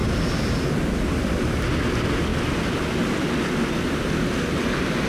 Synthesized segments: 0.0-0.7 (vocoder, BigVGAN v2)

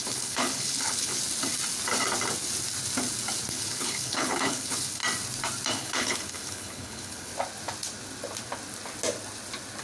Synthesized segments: 0.0-1.1 (codec, HILCodec); 3.5-5.0; 5.7-7.3

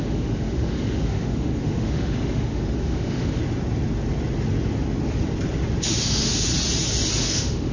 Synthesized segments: 0.0-3.4 (autoencoder, DAC-VAE); 5.9-6.5; 7.2-7.7